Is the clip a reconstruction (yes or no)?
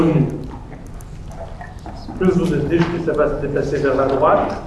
no